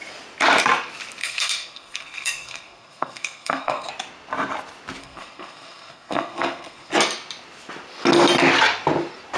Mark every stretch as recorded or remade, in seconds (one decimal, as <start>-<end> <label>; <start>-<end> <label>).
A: 0.0-1.2 recorded; 1.2-3.9 remade; 3.9-5.0 recorded; 5.0-6.9 remade; 6.9-9.4 recorded